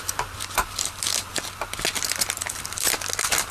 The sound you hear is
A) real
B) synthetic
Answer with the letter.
A